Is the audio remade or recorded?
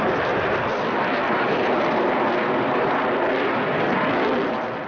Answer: remade